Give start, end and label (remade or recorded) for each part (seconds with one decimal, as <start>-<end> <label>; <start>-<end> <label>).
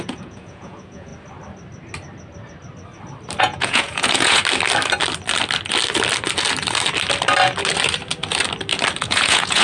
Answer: 0.0-1.1 remade; 1.1-3.4 recorded; 3.4-4.4 remade; 4.4-9.0 recorded; 9.0-9.6 remade